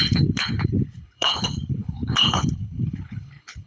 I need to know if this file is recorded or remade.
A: remade